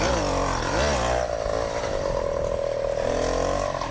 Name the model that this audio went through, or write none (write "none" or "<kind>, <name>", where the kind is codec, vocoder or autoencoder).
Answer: none